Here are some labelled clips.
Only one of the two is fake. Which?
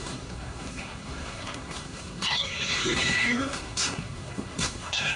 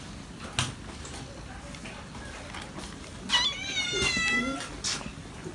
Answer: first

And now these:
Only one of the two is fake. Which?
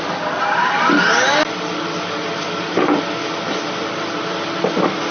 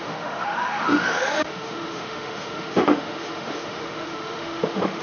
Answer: second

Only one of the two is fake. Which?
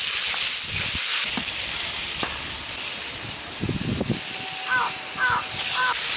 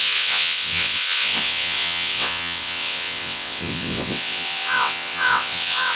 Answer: second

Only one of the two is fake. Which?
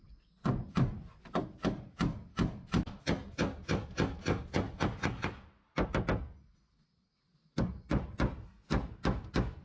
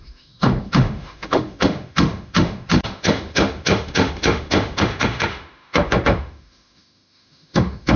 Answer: second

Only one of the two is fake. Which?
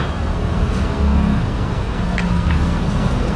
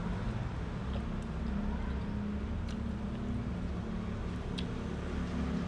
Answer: first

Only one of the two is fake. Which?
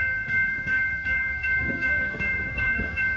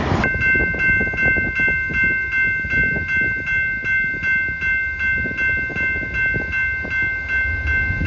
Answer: first